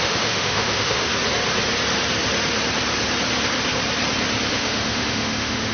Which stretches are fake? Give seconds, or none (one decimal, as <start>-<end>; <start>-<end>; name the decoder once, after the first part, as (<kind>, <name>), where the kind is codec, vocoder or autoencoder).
0.0-1.1 (autoencoder, DAC-VAE); 4.5-5.7

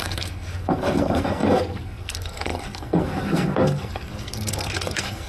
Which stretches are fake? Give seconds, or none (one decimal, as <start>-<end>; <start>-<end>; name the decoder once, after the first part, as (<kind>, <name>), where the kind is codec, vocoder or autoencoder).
0.0-5.3 (codec, SNAC)

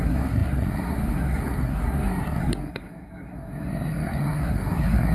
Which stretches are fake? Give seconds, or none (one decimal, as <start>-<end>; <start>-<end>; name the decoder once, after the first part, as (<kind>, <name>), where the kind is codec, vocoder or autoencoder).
0.0-5.1 (codec, SNAC)

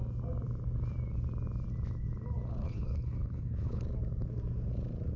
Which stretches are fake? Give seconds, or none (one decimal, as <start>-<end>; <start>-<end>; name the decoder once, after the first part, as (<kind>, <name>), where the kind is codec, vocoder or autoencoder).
2.6-3.8 (codec, HILCodec)

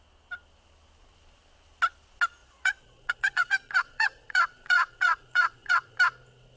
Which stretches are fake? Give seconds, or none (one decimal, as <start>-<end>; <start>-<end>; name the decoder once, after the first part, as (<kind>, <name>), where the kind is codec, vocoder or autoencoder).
2.4-6.0 (vocoder, Vocos)